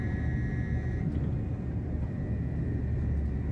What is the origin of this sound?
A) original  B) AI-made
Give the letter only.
A